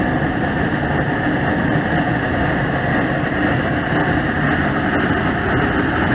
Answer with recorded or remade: recorded